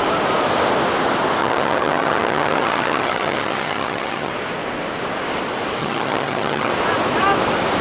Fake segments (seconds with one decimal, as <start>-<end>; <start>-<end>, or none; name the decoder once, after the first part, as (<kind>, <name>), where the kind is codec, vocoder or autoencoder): 1.4-4.3 (vocoder, HiFi-GAN); 5.8-6.7